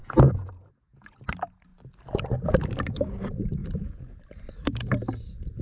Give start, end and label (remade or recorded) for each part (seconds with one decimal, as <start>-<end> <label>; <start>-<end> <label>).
0.0-1.2 remade; 1.2-3.6 recorded; 3.6-4.2 remade; 4.2-5.6 recorded